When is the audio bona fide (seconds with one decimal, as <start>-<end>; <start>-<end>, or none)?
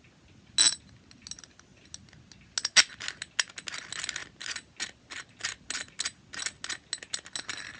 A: 0.0-7.8